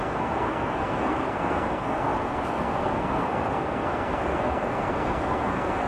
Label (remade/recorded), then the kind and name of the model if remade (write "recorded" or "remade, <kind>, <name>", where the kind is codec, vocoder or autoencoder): remade, codec, SNAC